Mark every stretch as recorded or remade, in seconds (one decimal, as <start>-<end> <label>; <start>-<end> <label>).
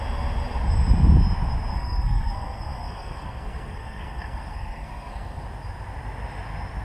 0.0-1.7 recorded; 1.7-5.4 remade; 5.4-6.8 recorded